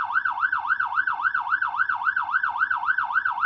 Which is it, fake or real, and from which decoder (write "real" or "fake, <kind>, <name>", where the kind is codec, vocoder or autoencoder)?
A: real